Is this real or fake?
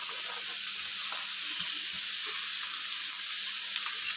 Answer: real